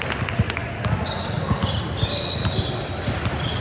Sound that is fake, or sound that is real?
real